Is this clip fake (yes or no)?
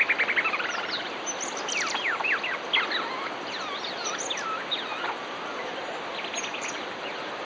no